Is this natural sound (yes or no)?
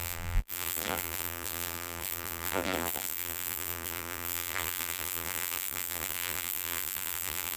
no